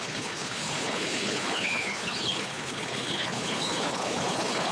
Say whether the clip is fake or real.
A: fake